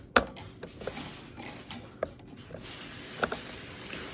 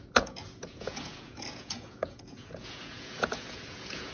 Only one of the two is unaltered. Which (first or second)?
first